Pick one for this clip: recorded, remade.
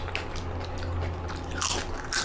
recorded